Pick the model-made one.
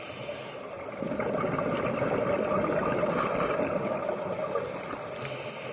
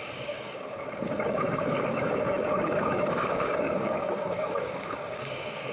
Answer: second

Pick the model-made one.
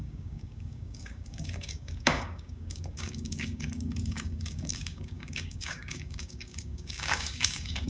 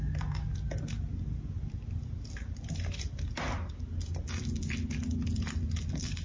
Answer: first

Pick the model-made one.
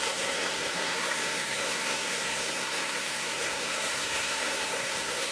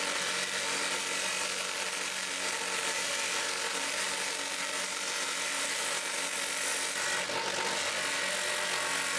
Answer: first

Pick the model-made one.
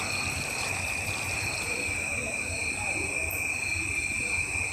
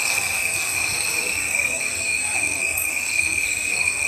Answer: second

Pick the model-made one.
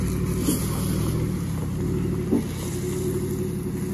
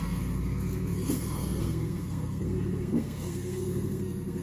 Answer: second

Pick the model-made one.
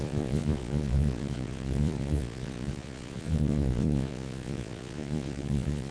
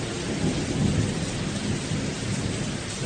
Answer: first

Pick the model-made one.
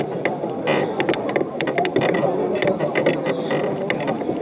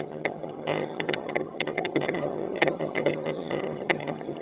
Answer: second